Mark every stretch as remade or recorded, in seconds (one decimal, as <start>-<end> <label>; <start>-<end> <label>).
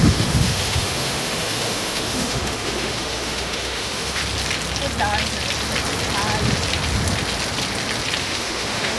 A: 0.0-4.2 remade; 4.2-8.2 recorded; 8.2-9.0 remade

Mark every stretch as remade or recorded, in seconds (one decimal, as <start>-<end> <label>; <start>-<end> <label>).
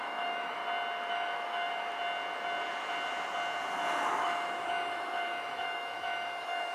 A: 0.0-0.6 remade; 0.6-1.1 recorded; 1.1-1.9 remade; 1.9-4.1 recorded; 4.1-6.7 remade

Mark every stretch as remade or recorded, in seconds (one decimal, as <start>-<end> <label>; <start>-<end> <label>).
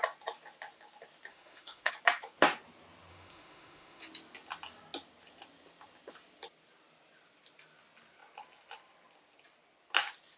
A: 0.0-1.3 recorded; 1.3-1.9 remade; 1.9-3.1 recorded; 3.1-4.0 remade; 4.0-10.4 recorded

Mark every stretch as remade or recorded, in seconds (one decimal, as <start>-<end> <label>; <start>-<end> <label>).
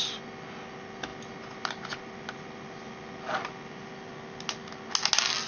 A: 0.0-5.5 recorded